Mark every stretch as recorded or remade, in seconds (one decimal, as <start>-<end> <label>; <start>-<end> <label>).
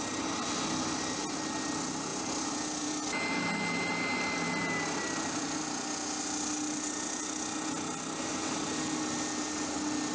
0.0-2.1 recorded; 2.1-2.9 remade; 2.9-10.1 recorded